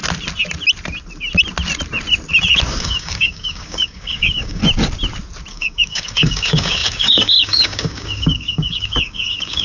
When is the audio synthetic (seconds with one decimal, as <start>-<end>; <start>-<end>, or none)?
2.8-4.6; 5.5-9.6